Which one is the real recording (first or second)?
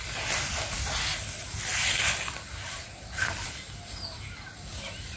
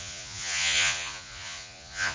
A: first